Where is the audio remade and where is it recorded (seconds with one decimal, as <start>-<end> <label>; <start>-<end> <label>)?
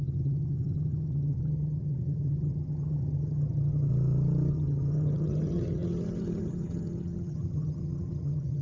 0.0-3.9 remade; 3.9-4.5 recorded; 4.5-8.6 remade